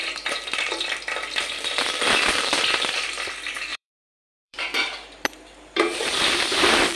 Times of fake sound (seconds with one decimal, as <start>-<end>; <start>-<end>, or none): 0.0-0.8; 3.7-7.0